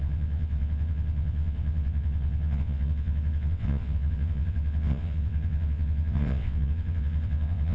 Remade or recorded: remade